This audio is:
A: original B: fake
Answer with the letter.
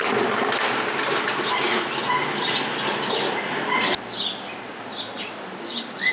A